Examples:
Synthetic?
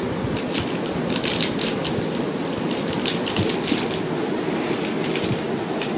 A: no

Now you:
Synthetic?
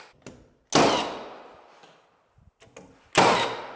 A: no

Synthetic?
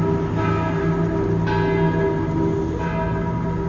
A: no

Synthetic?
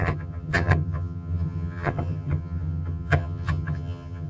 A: yes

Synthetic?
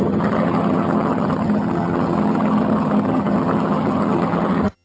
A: yes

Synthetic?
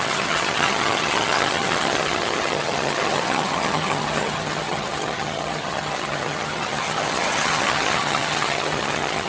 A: yes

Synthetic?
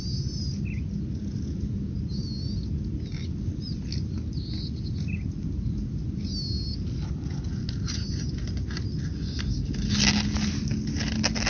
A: no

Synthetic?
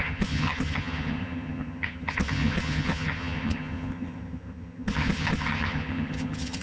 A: yes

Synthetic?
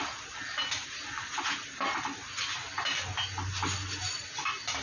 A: no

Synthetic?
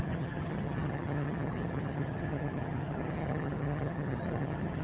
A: yes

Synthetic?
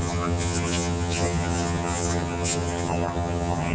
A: yes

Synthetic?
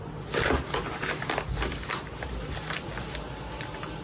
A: no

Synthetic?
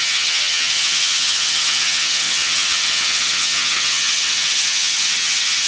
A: yes